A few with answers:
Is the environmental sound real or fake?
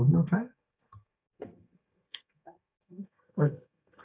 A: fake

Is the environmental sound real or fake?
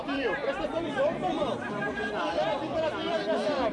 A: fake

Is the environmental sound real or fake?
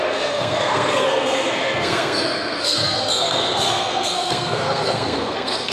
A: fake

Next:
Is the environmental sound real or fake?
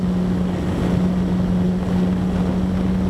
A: real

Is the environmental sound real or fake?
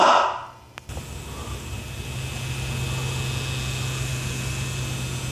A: real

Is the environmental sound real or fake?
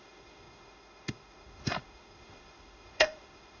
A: fake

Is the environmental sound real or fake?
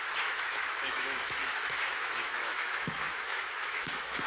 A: fake